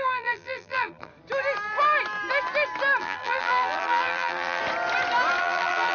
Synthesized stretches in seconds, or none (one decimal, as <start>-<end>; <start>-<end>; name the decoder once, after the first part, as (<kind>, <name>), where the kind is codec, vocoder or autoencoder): 0.0-1.1 (vocoder, BigVGAN v2); 3.0-4.6; 5.4-5.9